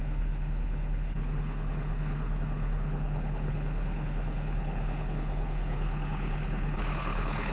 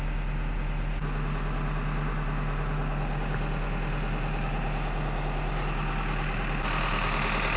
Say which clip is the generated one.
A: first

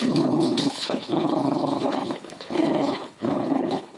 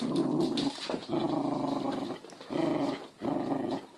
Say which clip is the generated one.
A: first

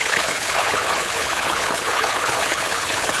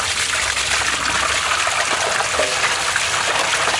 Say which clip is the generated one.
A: first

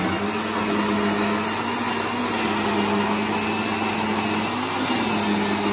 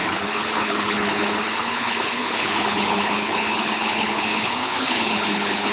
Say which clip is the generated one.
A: second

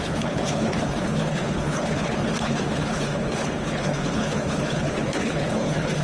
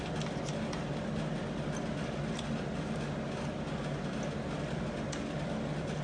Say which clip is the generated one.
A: first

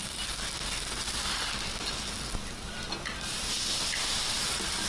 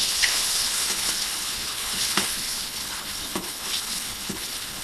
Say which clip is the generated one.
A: second